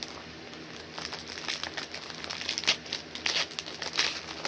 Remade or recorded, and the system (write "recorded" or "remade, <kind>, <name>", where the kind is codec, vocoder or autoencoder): recorded